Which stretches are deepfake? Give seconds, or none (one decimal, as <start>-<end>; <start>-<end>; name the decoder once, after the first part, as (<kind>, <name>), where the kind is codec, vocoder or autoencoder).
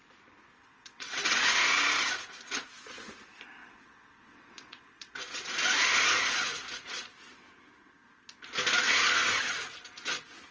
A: 0.7-1.4 (vocoder, WaveNeXt); 3.6-5.5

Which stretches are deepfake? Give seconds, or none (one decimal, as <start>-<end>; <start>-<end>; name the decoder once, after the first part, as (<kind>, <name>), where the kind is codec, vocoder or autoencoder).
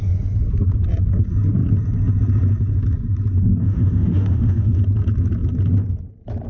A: 3.6-4.8 (autoencoder, DAC-VAE)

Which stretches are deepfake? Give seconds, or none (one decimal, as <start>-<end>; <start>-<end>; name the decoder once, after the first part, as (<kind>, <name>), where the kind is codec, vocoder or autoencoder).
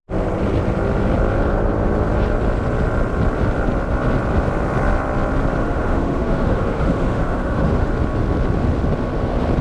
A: 5.6-7.9 (autoencoder, DAC-VAE)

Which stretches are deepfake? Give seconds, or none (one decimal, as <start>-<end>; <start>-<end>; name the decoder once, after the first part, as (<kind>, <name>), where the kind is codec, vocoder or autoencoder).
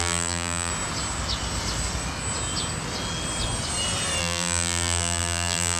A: 0.0-0.7 (vocoder, BigVGAN v2); 4.2-5.8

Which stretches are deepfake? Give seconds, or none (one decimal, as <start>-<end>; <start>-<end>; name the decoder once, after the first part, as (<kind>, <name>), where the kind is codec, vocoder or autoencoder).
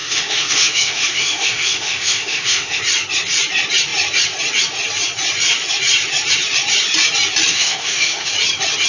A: 0.0-2.8 (autoencoder, DAC-VAE); 7.5-8.3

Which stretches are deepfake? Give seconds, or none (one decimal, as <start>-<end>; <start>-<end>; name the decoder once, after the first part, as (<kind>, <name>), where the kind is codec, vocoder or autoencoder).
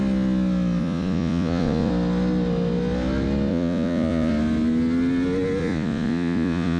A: 0.8-1.9 (vocoder, Vocos); 3.5-4.3; 5.6-6.8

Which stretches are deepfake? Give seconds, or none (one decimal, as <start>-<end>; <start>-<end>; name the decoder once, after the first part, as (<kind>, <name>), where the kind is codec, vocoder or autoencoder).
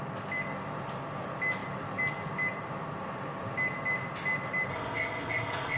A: 4.7-5.8 (codec, ZipCodec)